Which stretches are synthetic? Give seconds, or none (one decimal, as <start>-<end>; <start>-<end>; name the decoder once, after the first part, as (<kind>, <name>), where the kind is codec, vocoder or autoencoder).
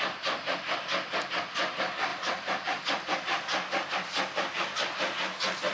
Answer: 2.1-2.8 (vocoder, BigVGAN v2)